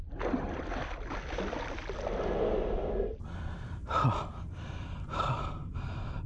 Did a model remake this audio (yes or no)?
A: no